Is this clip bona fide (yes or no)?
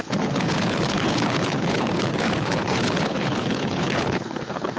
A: no